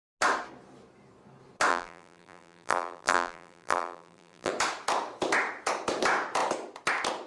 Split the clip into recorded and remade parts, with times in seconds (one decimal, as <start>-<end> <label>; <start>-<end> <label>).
0.0-1.7 recorded; 1.7-4.5 remade; 4.5-7.3 recorded